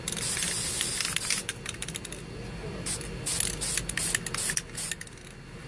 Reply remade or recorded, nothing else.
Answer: recorded